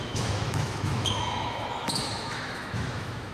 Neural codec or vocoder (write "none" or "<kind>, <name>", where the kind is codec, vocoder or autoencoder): autoencoder, DAC-VAE